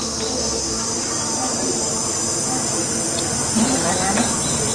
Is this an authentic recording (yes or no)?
yes